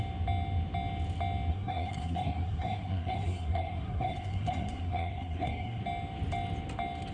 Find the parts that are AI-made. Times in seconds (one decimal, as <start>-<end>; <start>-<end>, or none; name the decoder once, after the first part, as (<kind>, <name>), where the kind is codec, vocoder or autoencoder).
1.5-5.8 (codec, SNAC)